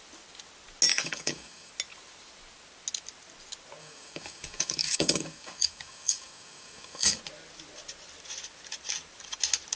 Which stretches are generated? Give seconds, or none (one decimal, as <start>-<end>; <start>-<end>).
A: 0.9-1.7; 3.8-7.2